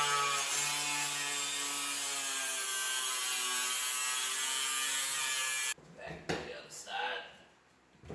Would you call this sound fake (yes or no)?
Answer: no